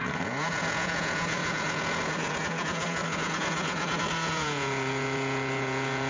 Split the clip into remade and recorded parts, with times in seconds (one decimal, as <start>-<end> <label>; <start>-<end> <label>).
0.0-6.1 remade